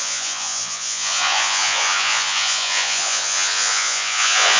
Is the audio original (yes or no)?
no